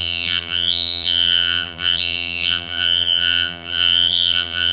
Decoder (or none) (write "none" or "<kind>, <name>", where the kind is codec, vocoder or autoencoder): vocoder, BigVGAN v2